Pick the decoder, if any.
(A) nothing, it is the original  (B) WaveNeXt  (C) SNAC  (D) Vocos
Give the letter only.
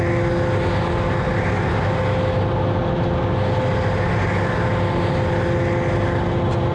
A